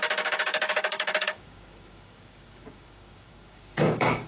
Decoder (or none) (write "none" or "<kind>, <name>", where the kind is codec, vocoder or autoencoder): codec, DAC